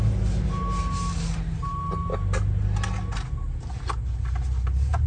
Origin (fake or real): real